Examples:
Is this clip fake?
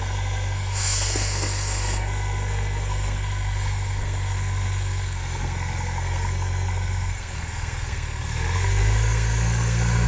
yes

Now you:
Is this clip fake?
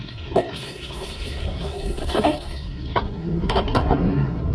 yes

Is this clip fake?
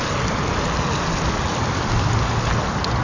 no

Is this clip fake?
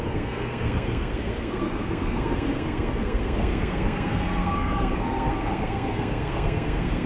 yes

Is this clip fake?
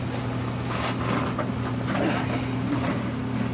no